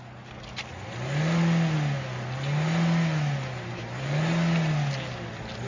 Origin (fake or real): real